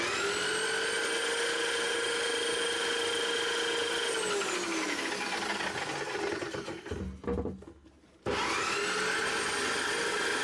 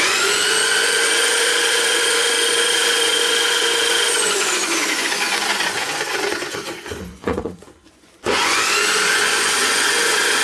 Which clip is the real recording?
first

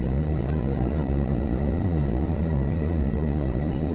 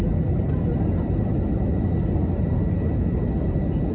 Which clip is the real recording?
second